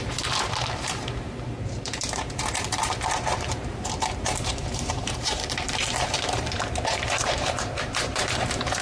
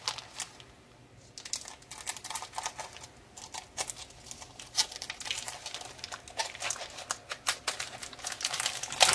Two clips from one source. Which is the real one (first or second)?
second